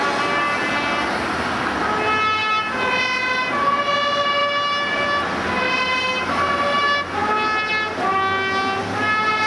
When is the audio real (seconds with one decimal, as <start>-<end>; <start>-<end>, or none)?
0.0-9.5